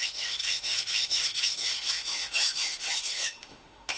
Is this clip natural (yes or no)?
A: no